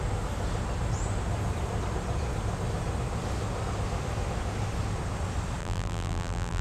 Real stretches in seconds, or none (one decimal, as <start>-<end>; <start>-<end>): 0.0-5.6